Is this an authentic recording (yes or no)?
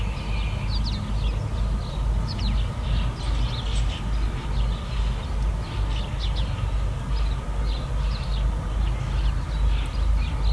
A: yes